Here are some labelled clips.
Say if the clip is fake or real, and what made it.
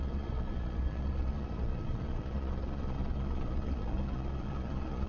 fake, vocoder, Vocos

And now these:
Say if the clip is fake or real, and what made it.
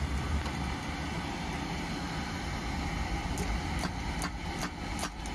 real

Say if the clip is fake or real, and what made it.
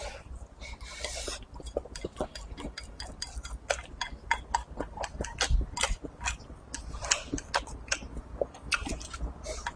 real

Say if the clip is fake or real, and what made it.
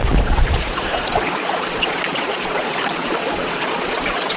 fake, vocoder, Vocos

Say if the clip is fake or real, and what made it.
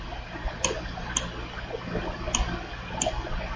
real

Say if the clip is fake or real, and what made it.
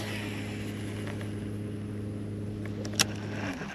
real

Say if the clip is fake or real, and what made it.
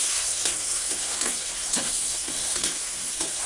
fake, codec, SNAC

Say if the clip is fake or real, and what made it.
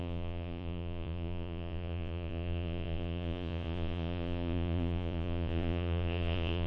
fake, vocoder, Vocos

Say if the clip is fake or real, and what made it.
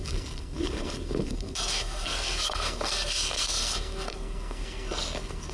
fake, codec, SNAC